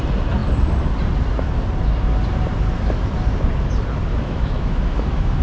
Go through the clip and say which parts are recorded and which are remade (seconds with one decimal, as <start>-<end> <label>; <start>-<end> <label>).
0.0-4.1 recorded; 4.1-5.4 remade